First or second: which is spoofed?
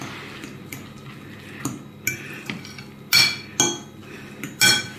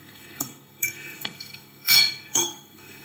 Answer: second